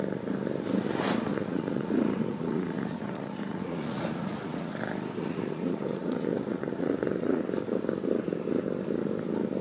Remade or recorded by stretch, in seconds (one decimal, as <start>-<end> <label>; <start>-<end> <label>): 0.0-1.3 recorded; 1.3-4.7 remade; 4.7-5.2 recorded; 5.2-7.4 remade; 7.4-9.6 recorded